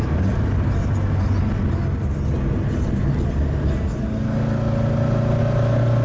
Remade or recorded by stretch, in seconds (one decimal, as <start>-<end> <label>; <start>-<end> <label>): 0.0-6.0 recorded